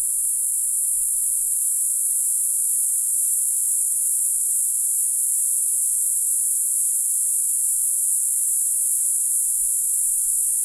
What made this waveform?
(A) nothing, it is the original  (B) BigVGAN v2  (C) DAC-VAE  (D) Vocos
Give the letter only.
D